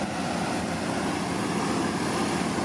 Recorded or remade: recorded